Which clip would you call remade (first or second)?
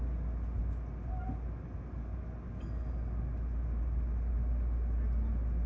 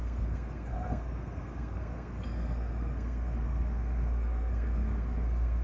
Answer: second